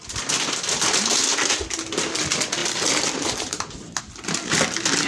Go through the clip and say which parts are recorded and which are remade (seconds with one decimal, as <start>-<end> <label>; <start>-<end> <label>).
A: 0.0-2.6 recorded; 2.6-4.0 remade; 4.0-5.1 recorded